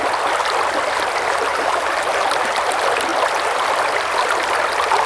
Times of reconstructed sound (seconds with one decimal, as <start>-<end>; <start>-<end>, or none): 1.5-2.1